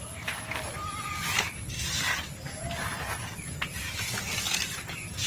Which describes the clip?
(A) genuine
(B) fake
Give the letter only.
A